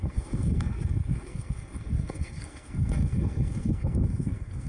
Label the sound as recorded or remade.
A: remade